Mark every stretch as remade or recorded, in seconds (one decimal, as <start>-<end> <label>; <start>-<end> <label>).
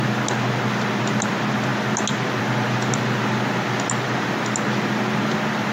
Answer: 0.0-5.7 recorded